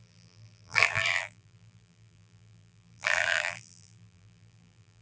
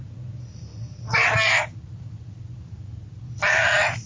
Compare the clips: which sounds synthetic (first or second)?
first